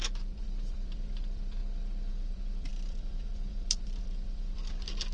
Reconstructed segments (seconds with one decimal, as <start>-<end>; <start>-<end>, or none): 0.0-1.6; 2.1-5.1